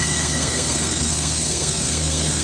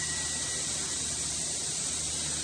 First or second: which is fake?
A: first